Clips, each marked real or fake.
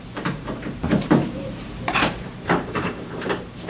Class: fake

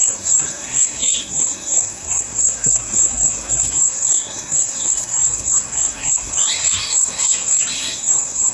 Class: fake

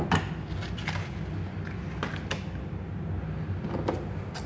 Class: real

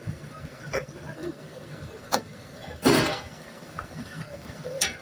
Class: fake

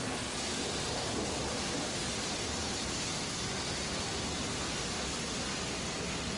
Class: real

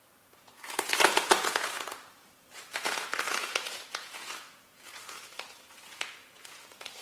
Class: fake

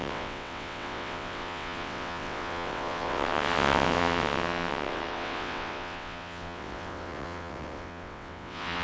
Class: fake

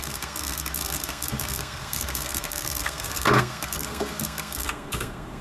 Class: fake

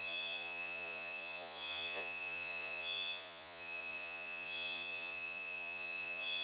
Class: fake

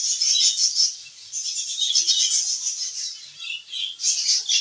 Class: real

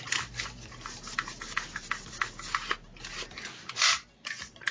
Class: real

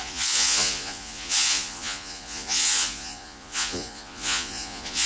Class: fake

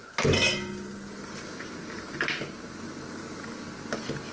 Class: real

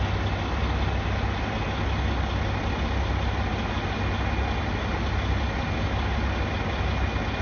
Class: real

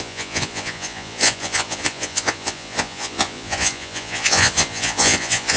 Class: fake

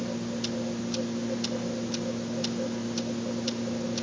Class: real